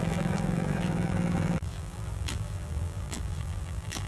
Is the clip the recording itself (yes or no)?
no